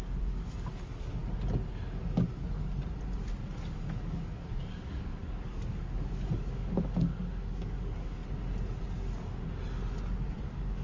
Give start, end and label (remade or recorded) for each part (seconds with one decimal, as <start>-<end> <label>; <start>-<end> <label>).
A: 0.0-1.2 remade; 1.2-3.9 recorded; 3.9-8.2 remade; 8.2-10.4 recorded; 10.4-10.8 remade